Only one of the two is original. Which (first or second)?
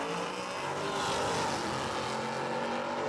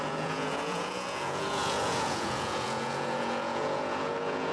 first